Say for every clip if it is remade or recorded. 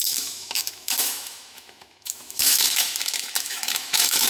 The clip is remade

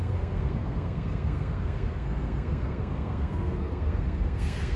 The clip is remade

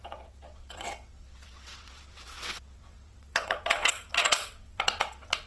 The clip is remade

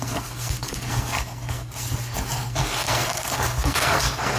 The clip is remade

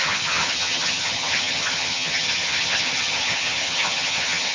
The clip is remade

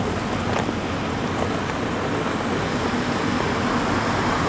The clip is recorded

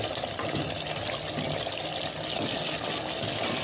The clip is recorded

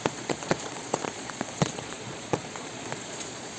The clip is remade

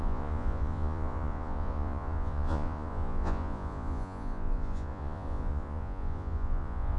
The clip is remade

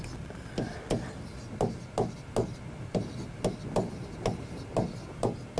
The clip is recorded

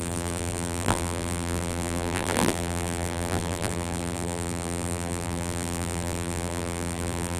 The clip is remade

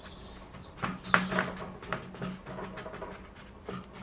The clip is recorded